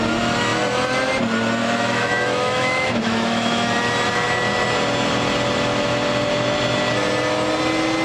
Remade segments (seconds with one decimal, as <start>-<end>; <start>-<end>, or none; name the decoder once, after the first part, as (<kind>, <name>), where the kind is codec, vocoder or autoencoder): 1.6-3.7 (autoencoder, DAC-VAE)